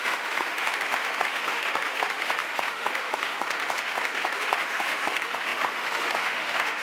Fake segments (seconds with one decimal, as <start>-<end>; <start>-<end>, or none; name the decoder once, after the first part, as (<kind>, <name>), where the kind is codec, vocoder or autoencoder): 0.0-6.8 (autoencoder, DAC-VAE)